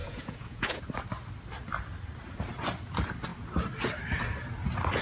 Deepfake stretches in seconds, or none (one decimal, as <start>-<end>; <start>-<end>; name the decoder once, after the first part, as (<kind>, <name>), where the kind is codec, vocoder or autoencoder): 0.0-0.8 (vocoder, Vocos)